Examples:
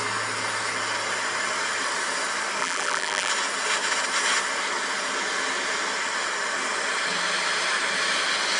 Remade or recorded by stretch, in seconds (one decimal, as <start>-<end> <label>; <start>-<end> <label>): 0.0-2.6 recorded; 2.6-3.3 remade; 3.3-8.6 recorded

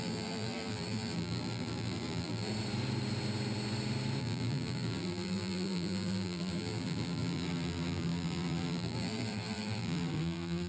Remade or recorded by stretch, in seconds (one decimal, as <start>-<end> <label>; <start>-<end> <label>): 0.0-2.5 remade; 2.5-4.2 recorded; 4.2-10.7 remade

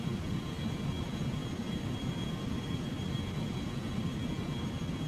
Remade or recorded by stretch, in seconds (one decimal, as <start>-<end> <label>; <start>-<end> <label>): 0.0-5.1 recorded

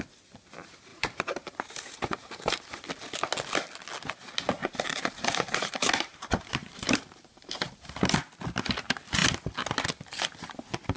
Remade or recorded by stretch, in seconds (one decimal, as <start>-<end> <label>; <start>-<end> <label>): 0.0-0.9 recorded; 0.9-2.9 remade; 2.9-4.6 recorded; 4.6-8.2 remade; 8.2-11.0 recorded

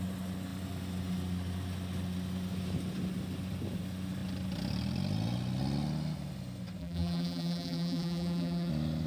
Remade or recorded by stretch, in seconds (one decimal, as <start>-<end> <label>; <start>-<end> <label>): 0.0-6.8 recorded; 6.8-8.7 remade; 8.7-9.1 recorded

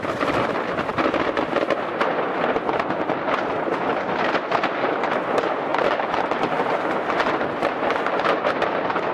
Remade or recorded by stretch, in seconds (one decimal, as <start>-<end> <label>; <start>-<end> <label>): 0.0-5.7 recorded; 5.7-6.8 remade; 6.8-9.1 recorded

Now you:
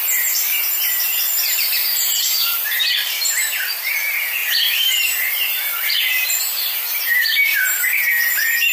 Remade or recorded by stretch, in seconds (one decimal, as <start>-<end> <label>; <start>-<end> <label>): 0.0-5.7 remade; 5.7-6.4 recorded; 6.4-8.7 remade

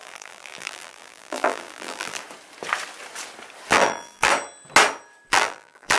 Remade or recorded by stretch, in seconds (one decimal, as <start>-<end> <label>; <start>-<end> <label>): 0.0-2.2 remade; 2.2-3.7 recorded; 3.7-4.3 remade; 4.3-5.3 recorded; 5.3-6.0 remade